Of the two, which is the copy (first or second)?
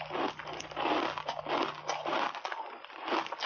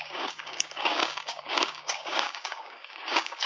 second